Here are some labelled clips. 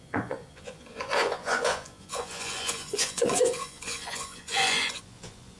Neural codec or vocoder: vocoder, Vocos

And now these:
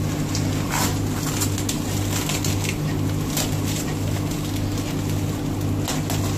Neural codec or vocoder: none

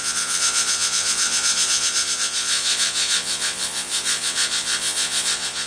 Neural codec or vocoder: vocoder, Vocos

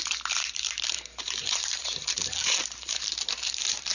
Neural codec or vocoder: vocoder, BigVGAN v2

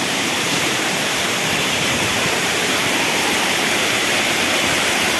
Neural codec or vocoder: vocoder, BigVGAN v2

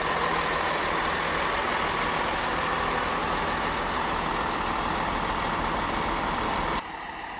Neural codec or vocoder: none